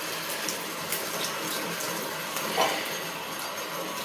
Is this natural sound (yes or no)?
no